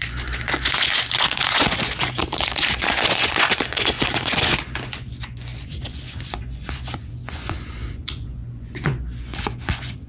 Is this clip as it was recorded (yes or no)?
no